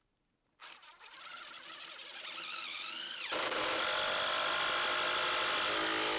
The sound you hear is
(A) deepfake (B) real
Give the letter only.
B